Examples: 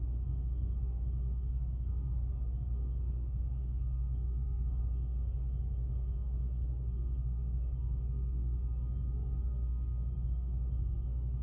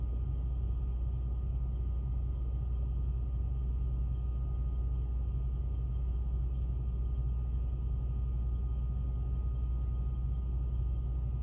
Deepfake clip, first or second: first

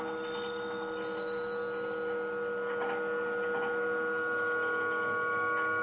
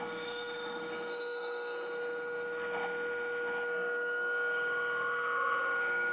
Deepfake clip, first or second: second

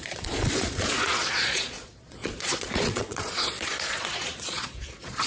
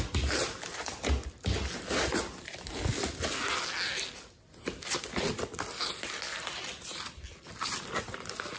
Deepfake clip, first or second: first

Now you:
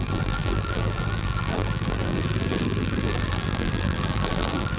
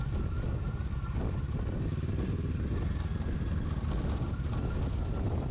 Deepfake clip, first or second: first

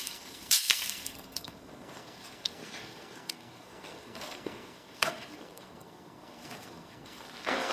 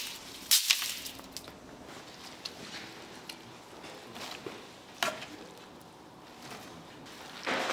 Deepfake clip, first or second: first